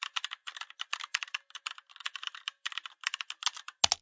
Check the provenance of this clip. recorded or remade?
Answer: recorded